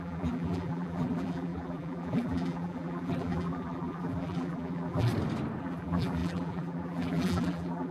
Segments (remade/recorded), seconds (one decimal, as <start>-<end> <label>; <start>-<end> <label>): 0.0-5.1 remade; 5.1-5.6 recorded; 5.6-7.9 remade